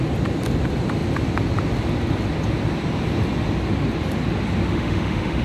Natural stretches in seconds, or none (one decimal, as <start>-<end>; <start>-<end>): 0.0-4.7